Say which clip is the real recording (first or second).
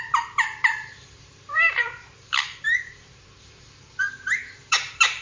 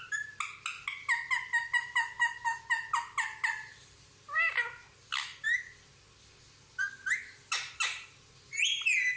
second